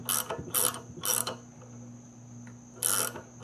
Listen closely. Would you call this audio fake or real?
real